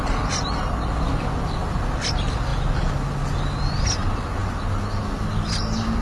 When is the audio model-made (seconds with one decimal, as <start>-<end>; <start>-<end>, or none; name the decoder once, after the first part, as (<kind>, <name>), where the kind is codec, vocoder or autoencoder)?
none